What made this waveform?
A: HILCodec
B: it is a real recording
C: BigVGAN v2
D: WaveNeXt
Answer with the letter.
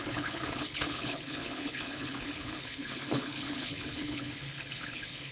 A